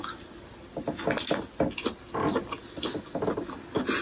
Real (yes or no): yes